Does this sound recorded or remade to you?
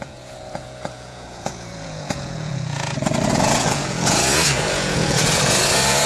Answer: remade